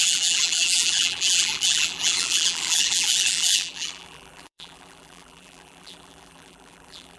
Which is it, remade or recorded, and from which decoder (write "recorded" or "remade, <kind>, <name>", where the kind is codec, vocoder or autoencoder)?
remade, vocoder, BigVGAN v2